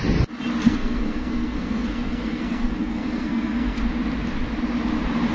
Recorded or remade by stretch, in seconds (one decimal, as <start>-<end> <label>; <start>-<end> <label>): 0.0-0.6 recorded; 0.6-3.8 remade; 3.8-5.3 recorded